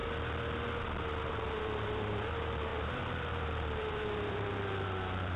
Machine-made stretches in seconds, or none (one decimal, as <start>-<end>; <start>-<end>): 1.5-5.4